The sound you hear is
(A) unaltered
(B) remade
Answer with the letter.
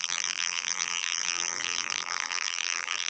B